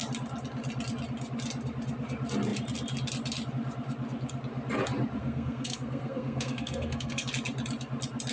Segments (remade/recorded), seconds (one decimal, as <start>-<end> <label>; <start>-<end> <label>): 0.0-5.2 recorded; 5.2-7.3 remade; 7.3-8.3 recorded